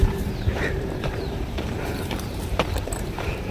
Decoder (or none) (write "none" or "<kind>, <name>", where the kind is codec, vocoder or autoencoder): vocoder, BigVGAN v2